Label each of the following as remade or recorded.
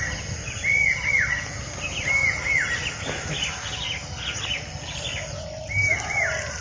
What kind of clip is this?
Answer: recorded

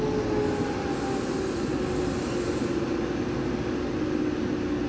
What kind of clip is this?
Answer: recorded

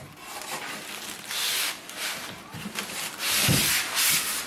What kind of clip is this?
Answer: remade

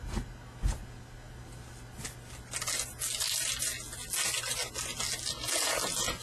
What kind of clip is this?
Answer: recorded